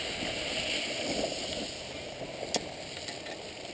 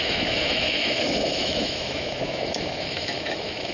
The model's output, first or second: second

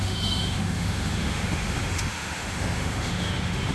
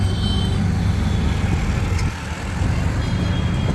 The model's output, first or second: first